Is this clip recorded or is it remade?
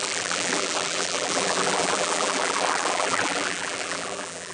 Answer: remade